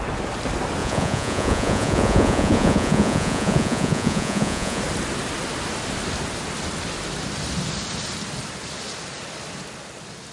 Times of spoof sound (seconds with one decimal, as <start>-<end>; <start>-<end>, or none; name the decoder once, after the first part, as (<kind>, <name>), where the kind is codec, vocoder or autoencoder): 0.8-4.8 (vocoder, Vocos)